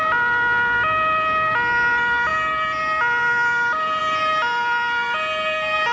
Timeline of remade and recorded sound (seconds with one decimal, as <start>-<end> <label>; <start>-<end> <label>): 0.0-5.9 recorded